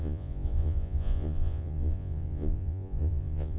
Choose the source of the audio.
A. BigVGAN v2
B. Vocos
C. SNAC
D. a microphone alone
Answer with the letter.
B